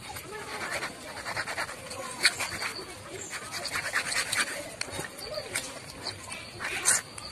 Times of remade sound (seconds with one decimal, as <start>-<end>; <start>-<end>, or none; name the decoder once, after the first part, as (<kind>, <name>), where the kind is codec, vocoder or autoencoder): none